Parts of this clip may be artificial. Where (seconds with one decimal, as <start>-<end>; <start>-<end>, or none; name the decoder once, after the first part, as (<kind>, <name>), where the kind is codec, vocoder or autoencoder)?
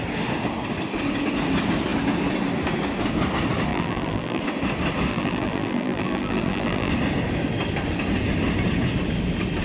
3.7-4.4 (vocoder, BigVGAN v2); 5.1-6.9